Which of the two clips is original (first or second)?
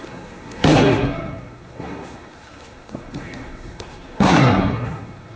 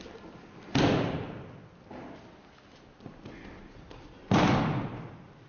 second